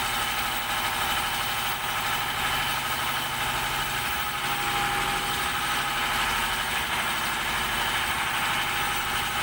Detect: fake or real real